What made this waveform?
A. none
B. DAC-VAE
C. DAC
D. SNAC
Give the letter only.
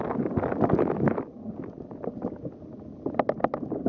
A